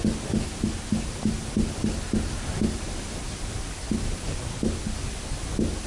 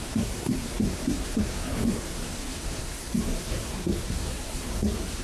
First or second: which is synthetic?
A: second